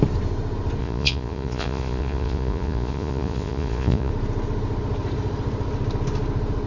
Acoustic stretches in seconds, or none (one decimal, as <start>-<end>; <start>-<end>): 0.0-0.8; 4.1-6.7